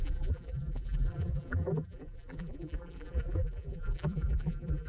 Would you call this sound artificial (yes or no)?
yes